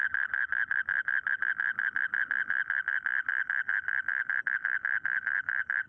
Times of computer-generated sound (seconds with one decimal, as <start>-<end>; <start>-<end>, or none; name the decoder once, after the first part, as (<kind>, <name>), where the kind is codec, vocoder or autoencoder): none

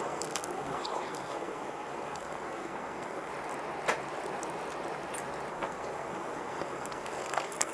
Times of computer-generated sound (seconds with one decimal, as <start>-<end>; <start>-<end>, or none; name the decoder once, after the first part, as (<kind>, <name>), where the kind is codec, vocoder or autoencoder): 0.0-3.3 (codec, SNAC); 5.5-7.7

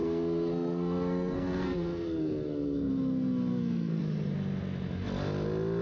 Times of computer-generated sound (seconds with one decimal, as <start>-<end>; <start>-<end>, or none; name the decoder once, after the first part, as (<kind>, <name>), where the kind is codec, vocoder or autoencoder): 0.0-2.9 (codec, SNAC); 3.5-4.0

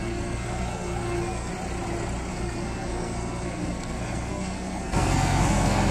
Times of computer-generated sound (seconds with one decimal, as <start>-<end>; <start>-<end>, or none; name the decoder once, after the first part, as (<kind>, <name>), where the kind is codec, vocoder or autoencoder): 0.0-1.5 (codec, SNAC); 2.3-5.9

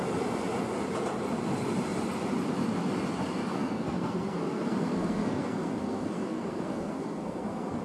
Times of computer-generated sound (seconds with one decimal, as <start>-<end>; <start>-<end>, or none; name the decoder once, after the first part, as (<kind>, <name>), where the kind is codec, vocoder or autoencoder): 3.5-7.8 (codec, SNAC)

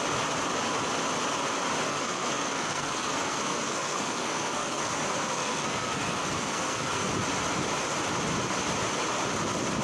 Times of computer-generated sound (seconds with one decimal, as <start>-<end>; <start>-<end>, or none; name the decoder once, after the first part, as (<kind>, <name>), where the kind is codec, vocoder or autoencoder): 1.9-7.1 (codec, SNAC)

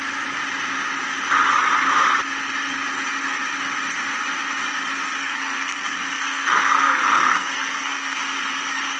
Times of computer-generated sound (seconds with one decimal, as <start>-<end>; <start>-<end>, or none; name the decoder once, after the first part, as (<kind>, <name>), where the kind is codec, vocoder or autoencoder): 5.2-8.2 (codec, SNAC)

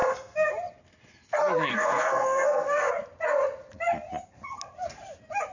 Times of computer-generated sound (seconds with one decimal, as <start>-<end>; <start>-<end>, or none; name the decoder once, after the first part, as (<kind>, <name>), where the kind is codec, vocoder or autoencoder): 0.0-0.5 (codec, SNAC); 1.7-2.9